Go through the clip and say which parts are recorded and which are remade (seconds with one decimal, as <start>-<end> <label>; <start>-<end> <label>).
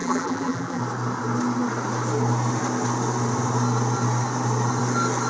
0.0-0.8 remade; 0.8-5.3 recorded